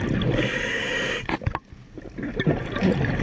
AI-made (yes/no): no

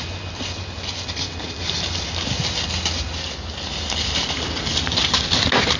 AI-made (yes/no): no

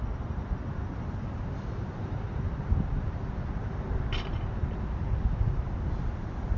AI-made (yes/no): no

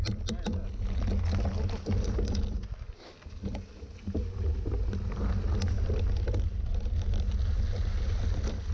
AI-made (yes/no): no